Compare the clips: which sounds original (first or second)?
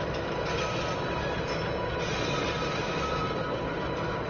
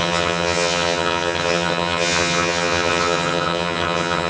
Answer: first